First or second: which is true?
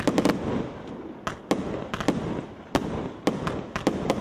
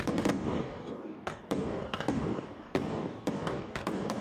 first